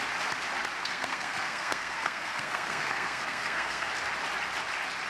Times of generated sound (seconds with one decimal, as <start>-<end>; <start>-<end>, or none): 0.8-3.9